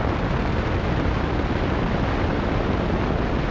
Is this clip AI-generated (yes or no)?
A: no